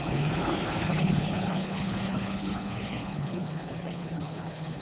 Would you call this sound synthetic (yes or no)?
yes